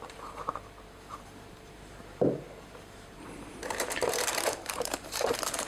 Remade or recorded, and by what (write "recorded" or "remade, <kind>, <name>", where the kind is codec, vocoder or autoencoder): remade, vocoder, BigVGAN v2